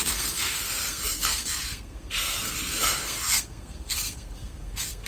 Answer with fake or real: fake